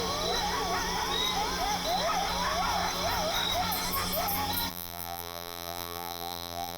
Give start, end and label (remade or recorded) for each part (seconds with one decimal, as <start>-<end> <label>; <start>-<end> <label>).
0.0-4.7 recorded; 4.7-6.8 remade